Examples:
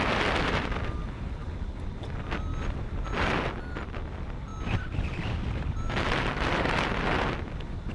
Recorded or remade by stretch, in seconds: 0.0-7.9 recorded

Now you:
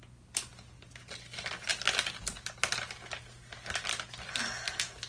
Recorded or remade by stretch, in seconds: 0.0-5.1 recorded

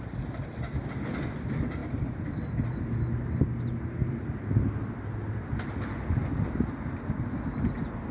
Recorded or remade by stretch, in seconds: 0.0-8.1 recorded